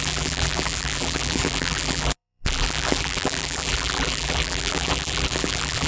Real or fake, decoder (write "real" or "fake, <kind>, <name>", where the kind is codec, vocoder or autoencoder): fake, vocoder, BigVGAN v2